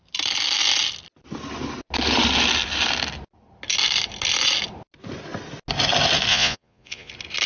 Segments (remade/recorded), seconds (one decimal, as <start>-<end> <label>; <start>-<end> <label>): 0.0-6.3 recorded; 6.3-7.1 remade; 7.1-7.5 recorded